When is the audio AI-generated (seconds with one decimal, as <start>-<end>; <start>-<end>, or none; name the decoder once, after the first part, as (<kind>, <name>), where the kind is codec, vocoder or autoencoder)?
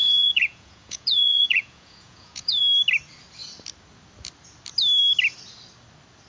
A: 0.0-2.6 (vocoder, Vocos)